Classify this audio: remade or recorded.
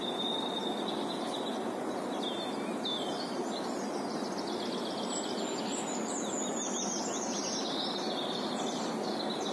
recorded